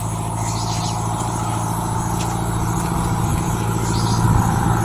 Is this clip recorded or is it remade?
recorded